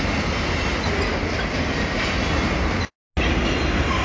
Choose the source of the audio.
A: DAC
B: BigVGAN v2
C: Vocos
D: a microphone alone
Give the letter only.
D